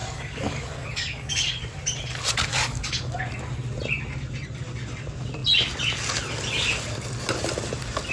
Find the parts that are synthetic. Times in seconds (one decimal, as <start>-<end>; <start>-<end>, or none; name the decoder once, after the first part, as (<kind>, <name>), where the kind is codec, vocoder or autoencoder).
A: 0.0-1.6 (codec, DAC); 2.5-3.2